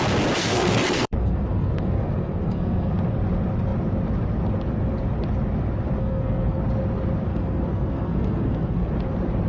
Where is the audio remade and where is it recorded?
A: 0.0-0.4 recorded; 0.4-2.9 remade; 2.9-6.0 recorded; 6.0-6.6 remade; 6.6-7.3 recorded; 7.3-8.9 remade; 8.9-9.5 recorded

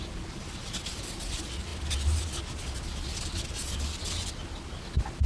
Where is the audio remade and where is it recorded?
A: 0.0-5.3 recorded

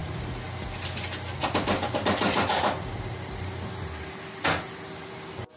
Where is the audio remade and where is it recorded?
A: 0.0-5.6 recorded

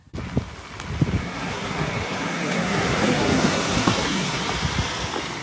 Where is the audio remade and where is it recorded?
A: 0.0-1.2 recorded; 1.2-4.4 remade; 4.4-5.4 recorded

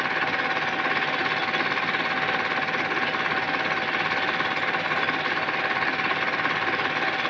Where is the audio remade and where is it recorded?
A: 0.0-7.3 recorded